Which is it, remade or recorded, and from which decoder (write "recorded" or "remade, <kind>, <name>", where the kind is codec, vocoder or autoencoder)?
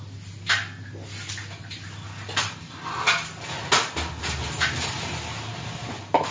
recorded